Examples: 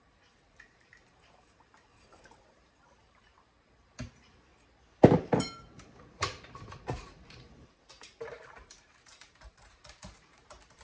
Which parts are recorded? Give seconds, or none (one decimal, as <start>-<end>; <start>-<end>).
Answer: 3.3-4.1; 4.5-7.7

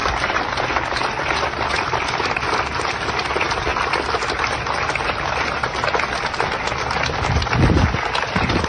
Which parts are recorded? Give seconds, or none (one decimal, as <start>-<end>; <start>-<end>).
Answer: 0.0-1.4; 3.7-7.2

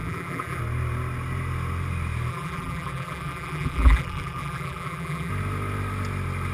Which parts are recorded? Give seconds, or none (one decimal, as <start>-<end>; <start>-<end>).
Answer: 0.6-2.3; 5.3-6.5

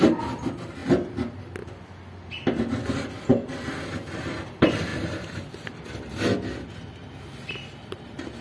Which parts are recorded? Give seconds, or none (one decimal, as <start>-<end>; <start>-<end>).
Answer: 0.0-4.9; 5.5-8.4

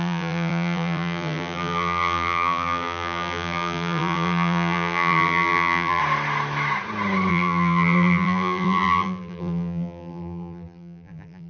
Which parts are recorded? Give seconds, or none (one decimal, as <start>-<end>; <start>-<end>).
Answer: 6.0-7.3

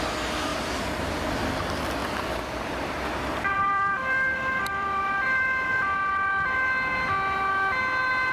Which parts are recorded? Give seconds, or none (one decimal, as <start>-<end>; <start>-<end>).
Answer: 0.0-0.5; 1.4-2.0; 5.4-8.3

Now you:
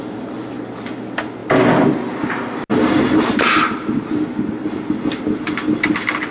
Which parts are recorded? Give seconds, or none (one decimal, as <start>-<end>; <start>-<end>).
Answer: 0.0-6.3